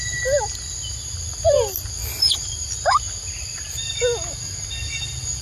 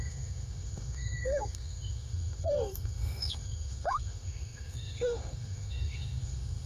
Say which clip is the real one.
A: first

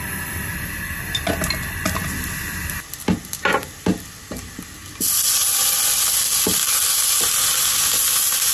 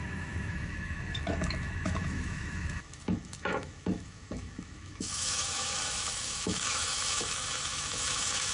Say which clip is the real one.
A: first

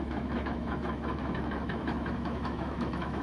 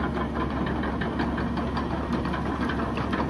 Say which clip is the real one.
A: second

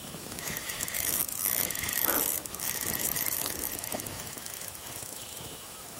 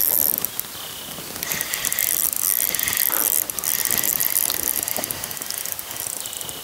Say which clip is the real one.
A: second